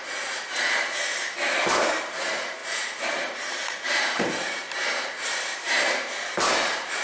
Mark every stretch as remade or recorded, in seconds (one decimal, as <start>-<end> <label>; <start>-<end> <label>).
0.0-1.1 remade; 1.1-1.8 recorded; 1.8-7.0 remade